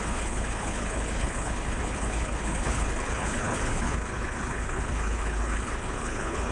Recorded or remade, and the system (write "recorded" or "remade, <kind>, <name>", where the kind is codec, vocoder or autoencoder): remade, codec, HILCodec